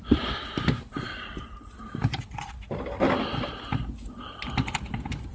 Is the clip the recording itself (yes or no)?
yes